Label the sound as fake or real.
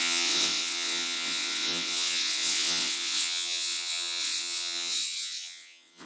fake